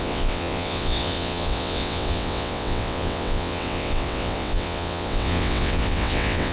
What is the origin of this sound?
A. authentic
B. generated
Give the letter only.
B